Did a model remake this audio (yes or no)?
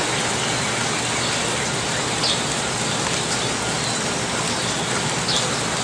no